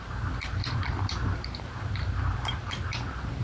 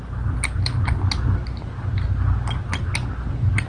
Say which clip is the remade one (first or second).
first